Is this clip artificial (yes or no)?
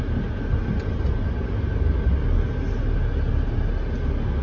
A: no